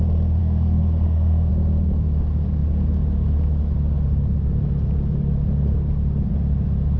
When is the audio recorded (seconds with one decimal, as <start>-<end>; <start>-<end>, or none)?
0.0-0.4; 1.5-7.0